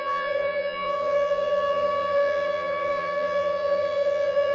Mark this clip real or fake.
fake